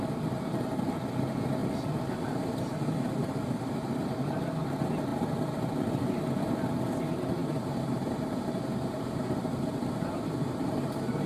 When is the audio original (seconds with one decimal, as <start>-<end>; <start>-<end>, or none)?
0.0-5.1; 5.7-7.4

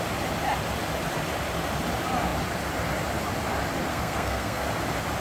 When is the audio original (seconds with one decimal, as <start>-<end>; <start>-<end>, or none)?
0.0-3.9; 4.7-5.2

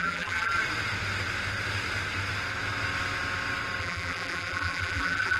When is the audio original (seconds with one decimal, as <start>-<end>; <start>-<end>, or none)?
0.6-3.8